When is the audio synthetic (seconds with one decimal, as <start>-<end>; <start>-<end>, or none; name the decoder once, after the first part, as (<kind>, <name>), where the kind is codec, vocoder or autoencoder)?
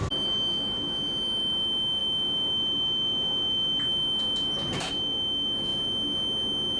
none